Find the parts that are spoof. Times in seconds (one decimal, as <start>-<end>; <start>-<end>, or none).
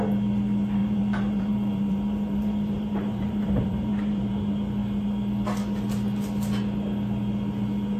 0.8-4.3